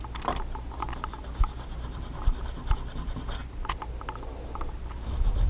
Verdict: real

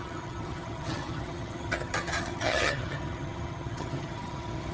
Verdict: fake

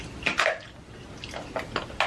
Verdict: real